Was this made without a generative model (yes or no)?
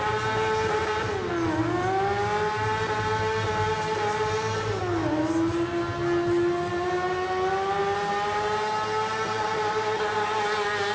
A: yes